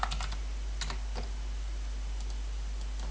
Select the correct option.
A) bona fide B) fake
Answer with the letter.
A